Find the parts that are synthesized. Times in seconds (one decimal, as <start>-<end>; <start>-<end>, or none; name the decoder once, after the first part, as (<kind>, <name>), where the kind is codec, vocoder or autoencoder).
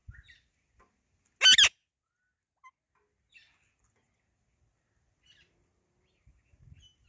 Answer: none